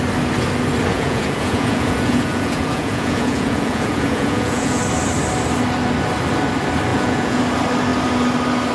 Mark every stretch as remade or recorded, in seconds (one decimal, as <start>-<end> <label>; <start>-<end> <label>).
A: 0.0-0.9 recorded; 0.9-4.8 remade; 4.8-6.9 recorded; 6.9-7.4 remade; 7.4-8.7 recorded